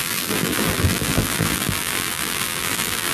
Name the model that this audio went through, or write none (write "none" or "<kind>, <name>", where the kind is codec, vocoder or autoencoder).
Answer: vocoder, BigVGAN v2